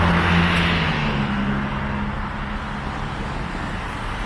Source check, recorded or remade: recorded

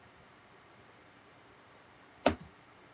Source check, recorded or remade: remade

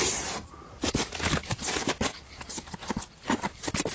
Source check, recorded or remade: remade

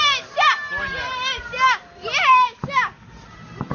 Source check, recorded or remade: recorded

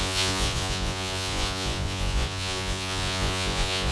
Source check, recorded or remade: remade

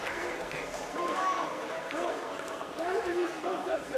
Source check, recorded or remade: remade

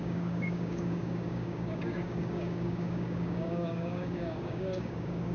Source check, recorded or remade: remade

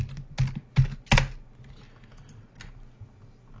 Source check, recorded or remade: recorded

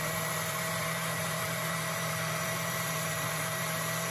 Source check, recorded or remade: remade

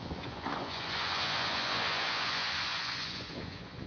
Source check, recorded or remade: remade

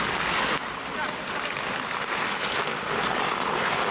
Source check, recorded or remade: recorded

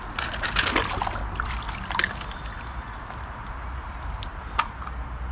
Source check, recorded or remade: recorded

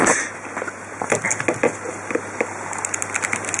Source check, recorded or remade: recorded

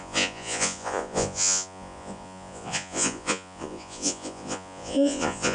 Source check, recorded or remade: remade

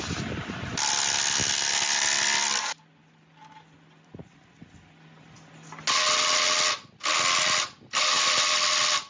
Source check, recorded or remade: recorded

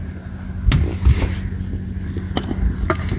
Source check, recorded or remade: recorded